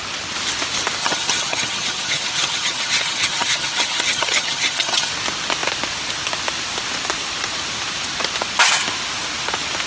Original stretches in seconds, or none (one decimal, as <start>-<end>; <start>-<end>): 0.0-1.0; 5.1-9.9